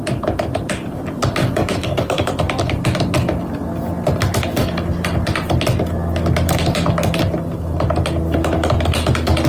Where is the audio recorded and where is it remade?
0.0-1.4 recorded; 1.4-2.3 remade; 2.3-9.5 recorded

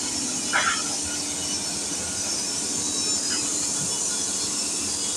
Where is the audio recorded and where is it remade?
0.0-5.2 recorded

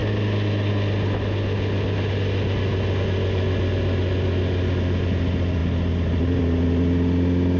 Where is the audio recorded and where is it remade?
0.0-7.6 recorded